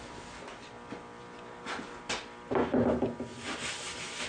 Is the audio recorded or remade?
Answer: recorded